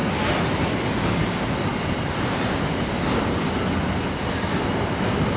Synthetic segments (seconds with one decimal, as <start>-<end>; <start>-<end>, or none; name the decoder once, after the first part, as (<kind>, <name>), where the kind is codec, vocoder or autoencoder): 1.7-2.9 (vocoder, BigVGAN v2)